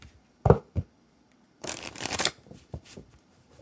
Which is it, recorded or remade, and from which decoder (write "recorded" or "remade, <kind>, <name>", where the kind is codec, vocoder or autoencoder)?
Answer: remade, vocoder, BigVGAN v2